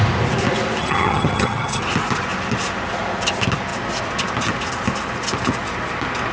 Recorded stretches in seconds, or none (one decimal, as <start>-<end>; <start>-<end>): 0.0-0.8; 1.8-6.3